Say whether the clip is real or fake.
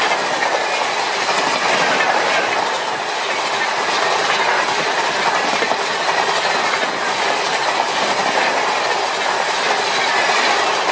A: real